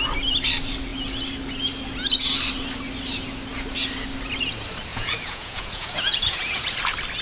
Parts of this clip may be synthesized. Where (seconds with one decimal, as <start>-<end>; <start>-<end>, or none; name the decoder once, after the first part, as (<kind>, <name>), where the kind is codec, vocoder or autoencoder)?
4.9-6.8 (vocoder, Vocos)